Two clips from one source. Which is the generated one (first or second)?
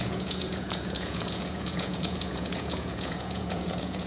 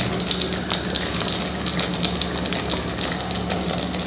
first